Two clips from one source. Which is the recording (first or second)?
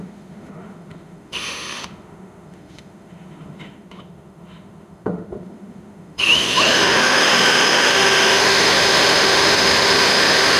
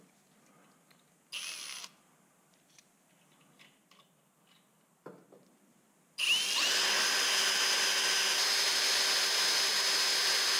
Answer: second